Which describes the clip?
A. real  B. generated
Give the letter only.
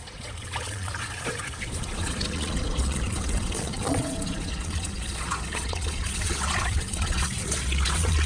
B